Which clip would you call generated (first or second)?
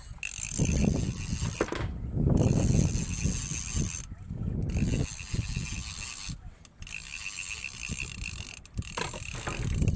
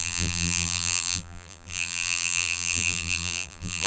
second